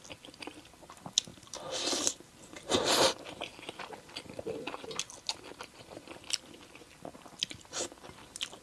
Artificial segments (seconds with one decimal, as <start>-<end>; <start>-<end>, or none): 1.3-5.0; 5.5-6.9